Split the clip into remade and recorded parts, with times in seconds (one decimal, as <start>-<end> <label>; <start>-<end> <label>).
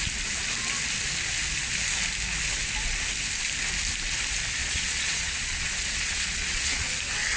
0.0-4.6 recorded; 4.6-6.9 remade; 6.9-7.4 recorded